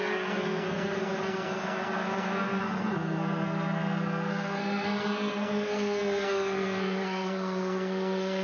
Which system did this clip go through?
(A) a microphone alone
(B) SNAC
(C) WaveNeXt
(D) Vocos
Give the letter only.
B